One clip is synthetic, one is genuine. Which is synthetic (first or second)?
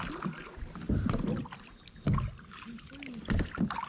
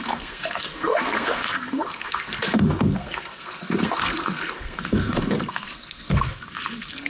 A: second